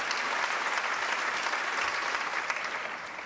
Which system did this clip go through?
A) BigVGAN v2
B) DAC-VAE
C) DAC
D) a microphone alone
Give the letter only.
D